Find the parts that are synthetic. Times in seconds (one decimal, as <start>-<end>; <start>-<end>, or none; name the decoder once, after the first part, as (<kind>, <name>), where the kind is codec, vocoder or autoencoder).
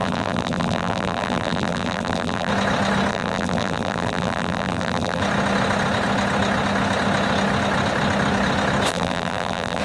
0.0-2.5 (vocoder, BigVGAN v2); 3.1-5.2; 8.9-9.8